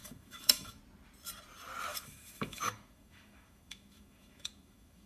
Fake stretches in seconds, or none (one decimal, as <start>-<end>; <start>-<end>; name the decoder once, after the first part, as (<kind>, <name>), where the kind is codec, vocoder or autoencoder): 0.0-0.8 (autoencoder, DAC-VAE); 1.9-5.1